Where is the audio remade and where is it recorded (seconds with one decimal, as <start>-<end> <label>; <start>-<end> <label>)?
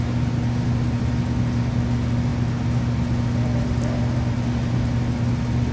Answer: 0.0-5.7 recorded